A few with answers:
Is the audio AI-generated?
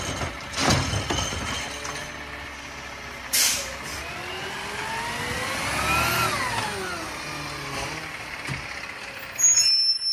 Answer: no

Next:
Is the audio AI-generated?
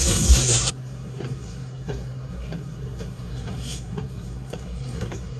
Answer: yes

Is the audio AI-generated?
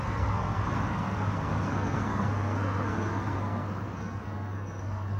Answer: yes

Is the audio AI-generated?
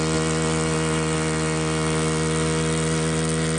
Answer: no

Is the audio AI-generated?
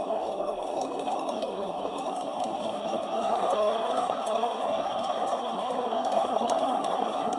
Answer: yes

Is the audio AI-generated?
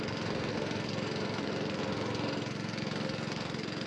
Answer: yes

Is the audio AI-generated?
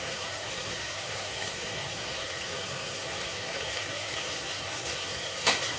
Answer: yes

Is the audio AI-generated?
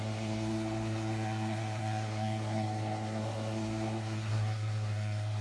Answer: yes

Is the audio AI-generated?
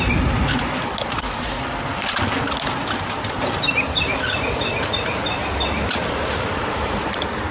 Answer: no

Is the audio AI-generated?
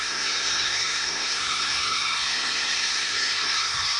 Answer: yes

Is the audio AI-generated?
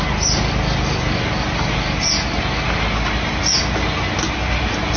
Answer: no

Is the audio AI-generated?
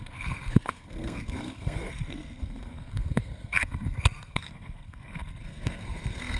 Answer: yes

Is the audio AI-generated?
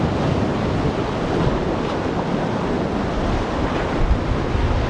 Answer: no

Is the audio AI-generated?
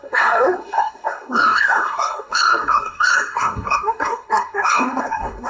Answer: yes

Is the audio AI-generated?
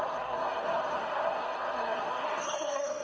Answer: yes